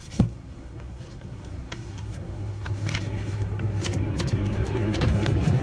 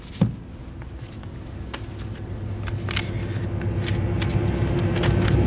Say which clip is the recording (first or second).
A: second